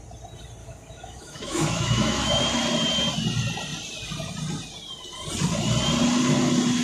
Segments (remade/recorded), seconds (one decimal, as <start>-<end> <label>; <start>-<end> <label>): 0.0-0.6 recorded; 0.6-2.4 remade; 2.4-6.8 recorded